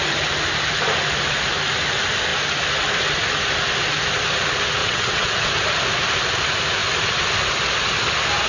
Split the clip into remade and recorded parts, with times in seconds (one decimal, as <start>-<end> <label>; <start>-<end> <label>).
0.0-4.8 recorded; 4.8-5.5 remade; 5.5-8.5 recorded